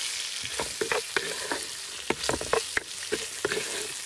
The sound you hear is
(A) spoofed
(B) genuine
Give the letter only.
B